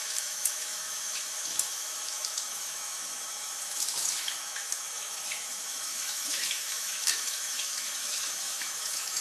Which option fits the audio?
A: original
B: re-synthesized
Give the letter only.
B